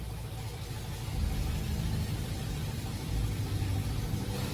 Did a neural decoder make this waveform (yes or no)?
no